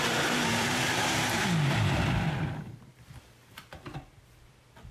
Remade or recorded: remade